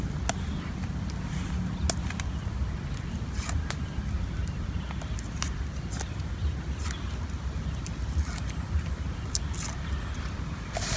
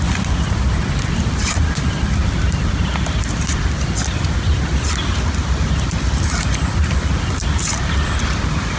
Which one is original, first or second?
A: first